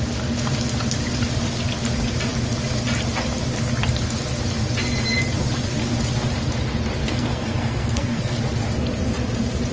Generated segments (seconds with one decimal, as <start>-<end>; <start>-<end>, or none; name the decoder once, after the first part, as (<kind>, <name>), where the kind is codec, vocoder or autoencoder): 7.0-8.4 (codec, SNAC)